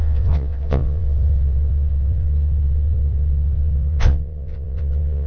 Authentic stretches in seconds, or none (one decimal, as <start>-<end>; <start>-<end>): none